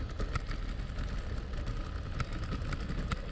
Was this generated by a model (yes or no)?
no